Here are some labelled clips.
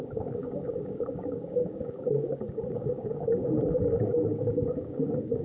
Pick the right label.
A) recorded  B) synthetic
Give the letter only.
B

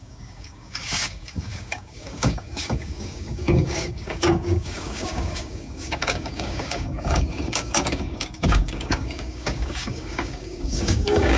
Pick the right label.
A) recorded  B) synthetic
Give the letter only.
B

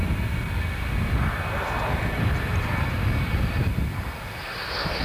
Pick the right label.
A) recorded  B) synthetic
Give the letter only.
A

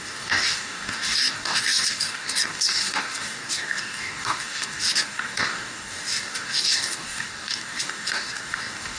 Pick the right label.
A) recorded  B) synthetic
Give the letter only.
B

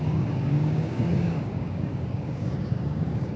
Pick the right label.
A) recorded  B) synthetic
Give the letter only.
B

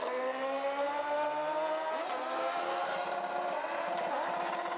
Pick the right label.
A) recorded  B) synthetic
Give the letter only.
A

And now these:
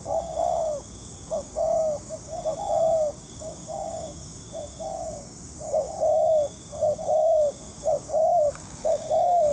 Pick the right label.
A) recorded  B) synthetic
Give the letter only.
B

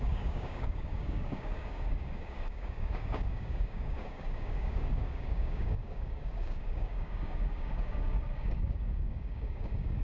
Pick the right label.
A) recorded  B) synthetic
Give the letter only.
B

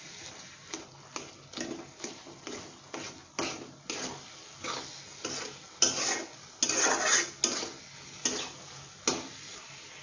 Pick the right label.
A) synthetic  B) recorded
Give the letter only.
B